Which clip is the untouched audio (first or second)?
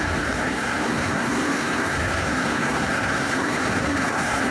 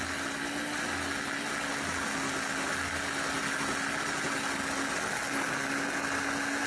second